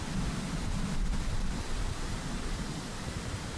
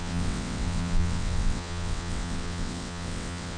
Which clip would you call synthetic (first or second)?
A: second